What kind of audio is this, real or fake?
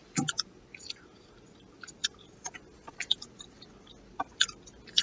real